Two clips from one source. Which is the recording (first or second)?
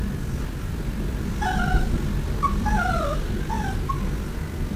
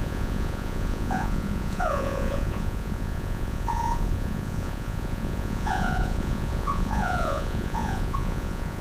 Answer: first